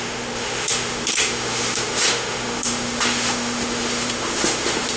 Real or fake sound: fake